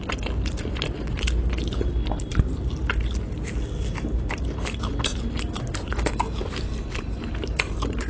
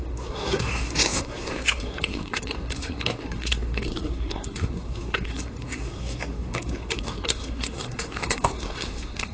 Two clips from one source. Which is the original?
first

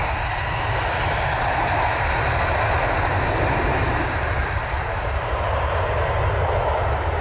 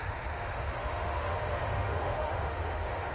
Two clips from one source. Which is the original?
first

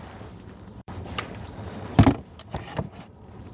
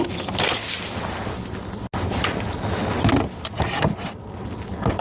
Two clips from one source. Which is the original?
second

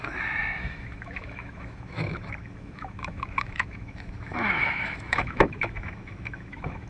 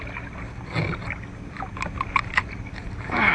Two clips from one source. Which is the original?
second